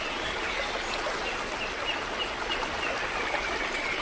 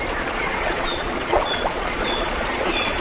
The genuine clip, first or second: first